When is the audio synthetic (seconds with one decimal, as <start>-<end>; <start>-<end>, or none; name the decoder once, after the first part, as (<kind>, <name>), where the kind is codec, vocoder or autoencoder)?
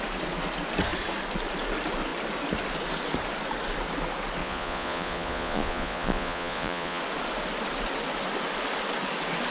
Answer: 4.4-7.0 (vocoder, Vocos)